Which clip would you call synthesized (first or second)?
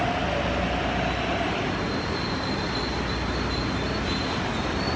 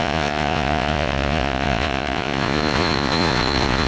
second